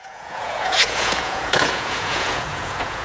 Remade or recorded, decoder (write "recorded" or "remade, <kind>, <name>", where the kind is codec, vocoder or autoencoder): remade, vocoder, Vocos